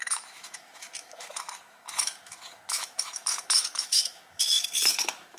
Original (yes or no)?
no